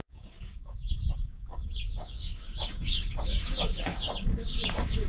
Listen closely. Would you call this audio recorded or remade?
remade